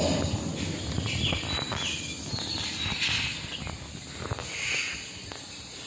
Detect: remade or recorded recorded